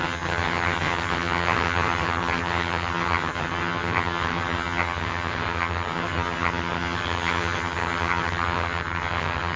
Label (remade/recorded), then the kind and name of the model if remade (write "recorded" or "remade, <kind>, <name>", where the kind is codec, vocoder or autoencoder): remade, vocoder, HiFi-GAN